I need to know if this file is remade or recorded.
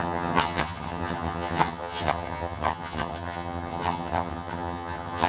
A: remade